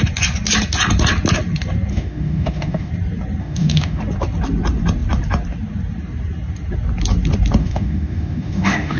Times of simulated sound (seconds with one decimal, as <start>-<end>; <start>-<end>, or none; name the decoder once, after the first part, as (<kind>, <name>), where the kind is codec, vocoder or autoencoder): 1.9-2.9 (autoencoder, DAC-VAE); 3.4-4.0; 7.6-9.0